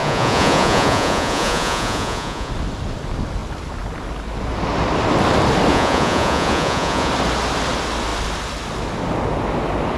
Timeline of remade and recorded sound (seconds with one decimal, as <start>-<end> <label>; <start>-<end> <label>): 0.0-2.5 remade; 2.5-5.7 recorded; 5.7-7.1 remade; 7.1-10.0 recorded